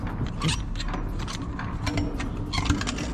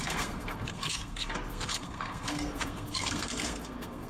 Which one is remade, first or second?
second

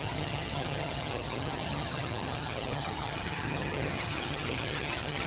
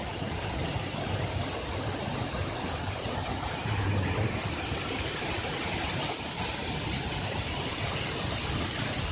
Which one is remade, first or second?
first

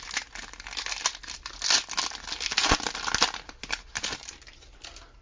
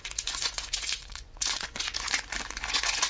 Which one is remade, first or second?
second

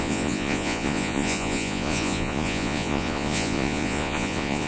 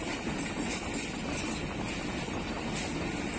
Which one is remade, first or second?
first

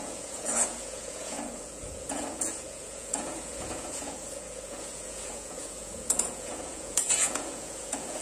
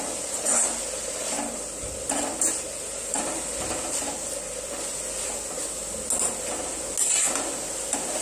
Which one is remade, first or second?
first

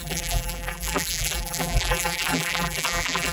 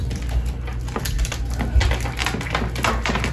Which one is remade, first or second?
first